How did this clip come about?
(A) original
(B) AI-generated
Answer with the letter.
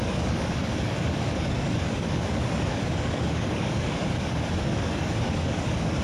B